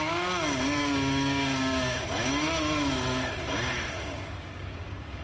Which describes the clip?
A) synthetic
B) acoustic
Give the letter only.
A